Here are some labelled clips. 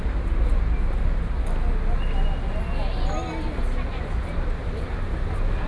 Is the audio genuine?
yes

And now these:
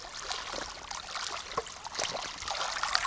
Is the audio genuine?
yes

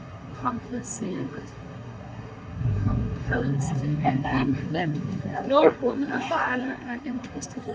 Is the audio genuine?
no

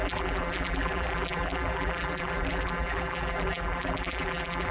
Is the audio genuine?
no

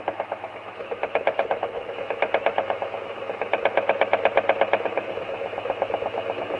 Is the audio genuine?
no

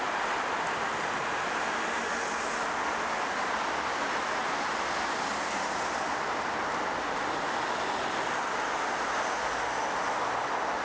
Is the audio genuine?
yes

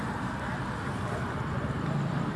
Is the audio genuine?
yes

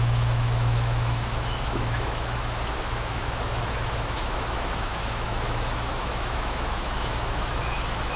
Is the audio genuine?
no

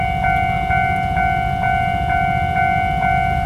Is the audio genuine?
yes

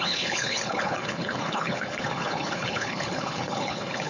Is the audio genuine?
no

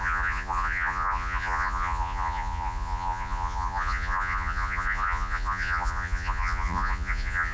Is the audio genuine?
no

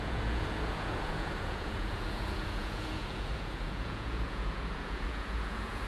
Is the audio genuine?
no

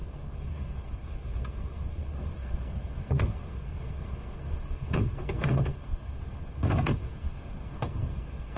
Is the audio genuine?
no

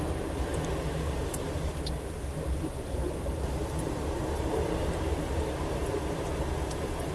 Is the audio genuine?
no